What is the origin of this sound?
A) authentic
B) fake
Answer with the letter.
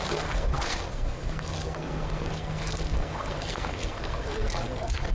B